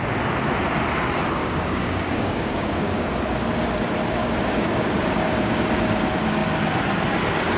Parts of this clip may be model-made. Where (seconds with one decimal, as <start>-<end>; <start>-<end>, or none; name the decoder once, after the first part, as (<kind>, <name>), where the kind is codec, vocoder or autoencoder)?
1.4-3.1 (codec, DAC); 4.2-5.7